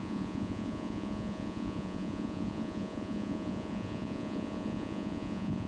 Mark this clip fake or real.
fake